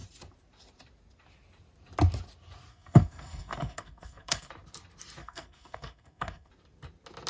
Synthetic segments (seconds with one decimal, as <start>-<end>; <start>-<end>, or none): 2.7-4.5; 5.2-6.5